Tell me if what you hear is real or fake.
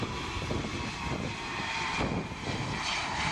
real